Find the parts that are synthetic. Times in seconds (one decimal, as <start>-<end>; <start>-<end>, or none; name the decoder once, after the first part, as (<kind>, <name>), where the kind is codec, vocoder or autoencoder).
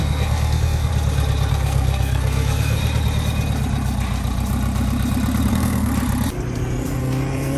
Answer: 0.0-0.9 (codec, SNAC); 1.5-2.8; 5.5-5.9; 7.0-7.6